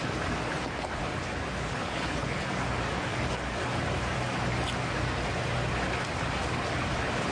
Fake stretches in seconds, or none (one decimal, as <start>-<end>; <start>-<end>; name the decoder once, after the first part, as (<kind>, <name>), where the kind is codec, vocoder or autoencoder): 1.7-2.5 (codec, HILCodec)